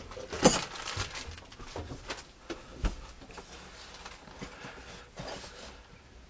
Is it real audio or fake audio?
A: real